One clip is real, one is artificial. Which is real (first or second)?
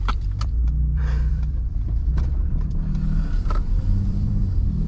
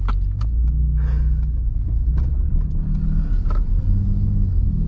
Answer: second